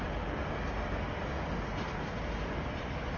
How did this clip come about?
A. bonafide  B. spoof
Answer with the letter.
A